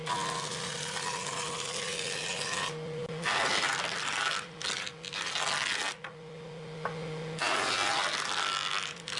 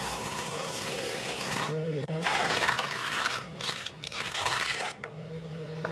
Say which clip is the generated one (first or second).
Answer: second